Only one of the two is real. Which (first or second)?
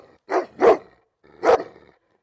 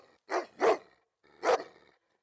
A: second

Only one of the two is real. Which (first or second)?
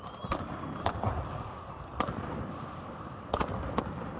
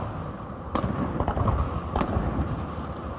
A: second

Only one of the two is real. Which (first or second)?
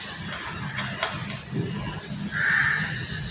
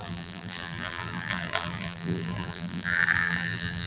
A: first